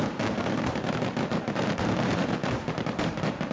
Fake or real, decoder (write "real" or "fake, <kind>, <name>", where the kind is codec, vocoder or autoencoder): fake, vocoder, BigVGAN v2